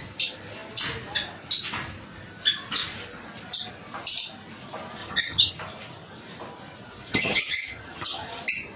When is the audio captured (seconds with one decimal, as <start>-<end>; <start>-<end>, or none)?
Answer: 0.0-5.0; 5.5-7.1; 8.4-8.8